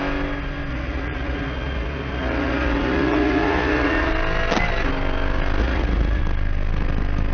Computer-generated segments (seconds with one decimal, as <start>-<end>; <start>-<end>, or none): 0.7-4.1; 5.6-6.2